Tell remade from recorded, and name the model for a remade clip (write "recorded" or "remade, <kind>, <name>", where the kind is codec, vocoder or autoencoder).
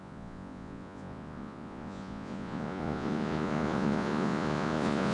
remade, vocoder, Vocos